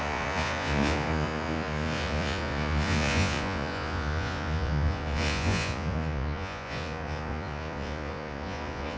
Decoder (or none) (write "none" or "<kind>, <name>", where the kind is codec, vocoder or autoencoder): vocoder, Vocos